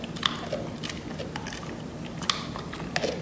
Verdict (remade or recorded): recorded